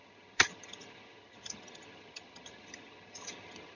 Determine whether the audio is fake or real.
fake